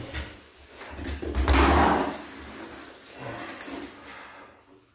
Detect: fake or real real